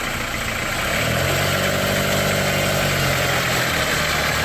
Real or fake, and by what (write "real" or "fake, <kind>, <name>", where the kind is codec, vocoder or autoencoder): real